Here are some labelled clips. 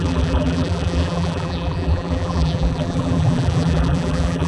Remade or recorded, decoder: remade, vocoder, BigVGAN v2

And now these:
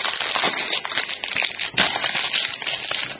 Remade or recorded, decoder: recorded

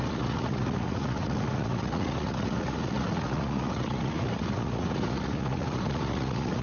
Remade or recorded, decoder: remade, vocoder, Vocos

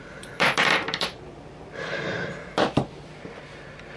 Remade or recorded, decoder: remade, vocoder, BigVGAN v2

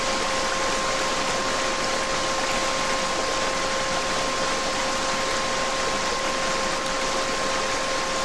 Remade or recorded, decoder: recorded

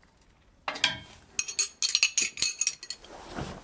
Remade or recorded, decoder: recorded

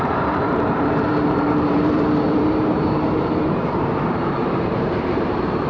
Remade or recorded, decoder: remade, vocoder, BigVGAN v2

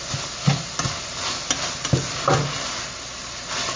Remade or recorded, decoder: recorded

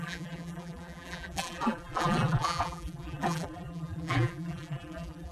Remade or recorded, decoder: remade, vocoder, BigVGAN v2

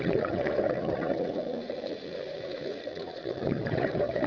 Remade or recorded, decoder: remade, vocoder, Vocos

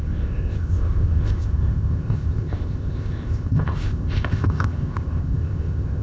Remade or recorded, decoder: remade, codec, ZipCodec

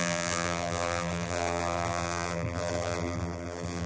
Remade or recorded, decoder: remade, vocoder, BigVGAN v2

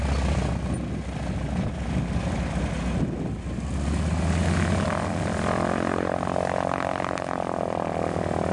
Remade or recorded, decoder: recorded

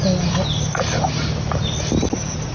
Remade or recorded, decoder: recorded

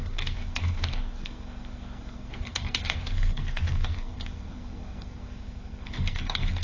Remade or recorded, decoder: remade, codec, SNAC